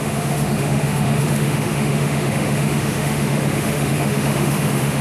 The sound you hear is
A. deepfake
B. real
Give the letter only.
A